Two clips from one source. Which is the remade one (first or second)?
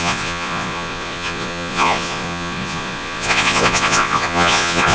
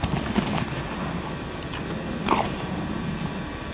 first